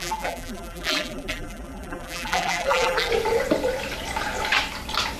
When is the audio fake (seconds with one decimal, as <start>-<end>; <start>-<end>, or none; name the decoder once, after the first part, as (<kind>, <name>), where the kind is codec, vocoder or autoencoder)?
0.0-3.1 (vocoder, BigVGAN v2)